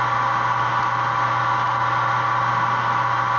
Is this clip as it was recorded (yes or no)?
yes